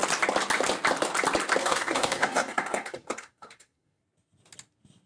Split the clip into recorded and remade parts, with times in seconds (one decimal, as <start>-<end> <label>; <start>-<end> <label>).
0.0-1.6 recorded; 1.6-4.0 remade; 4.0-5.1 recorded